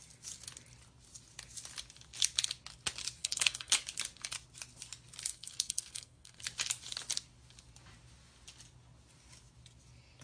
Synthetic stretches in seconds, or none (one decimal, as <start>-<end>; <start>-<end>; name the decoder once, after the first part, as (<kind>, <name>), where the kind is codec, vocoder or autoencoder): 3.2-3.8 (codec, SNAC); 5.3-6.4